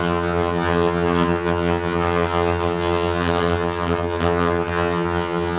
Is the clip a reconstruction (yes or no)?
yes